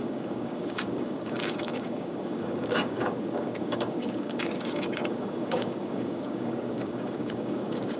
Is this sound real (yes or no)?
no